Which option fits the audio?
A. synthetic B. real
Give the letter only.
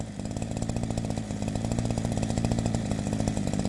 A